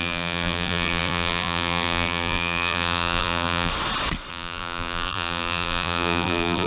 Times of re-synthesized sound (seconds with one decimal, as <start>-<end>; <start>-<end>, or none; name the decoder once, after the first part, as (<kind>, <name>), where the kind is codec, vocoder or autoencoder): 0.0-3.7 (vocoder, BigVGAN v2); 4.3-6.7